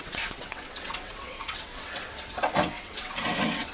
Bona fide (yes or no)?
no